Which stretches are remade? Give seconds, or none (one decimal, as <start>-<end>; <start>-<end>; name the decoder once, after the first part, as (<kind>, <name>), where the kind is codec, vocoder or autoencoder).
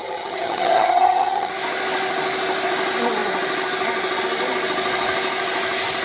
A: 0.0-1.5 (vocoder, HiFi-GAN)